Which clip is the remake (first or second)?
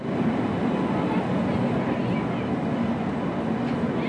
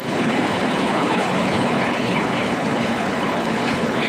second